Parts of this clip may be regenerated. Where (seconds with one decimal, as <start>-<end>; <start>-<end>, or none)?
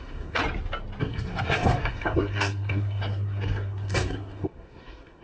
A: 0.0-0.4; 1.0-5.2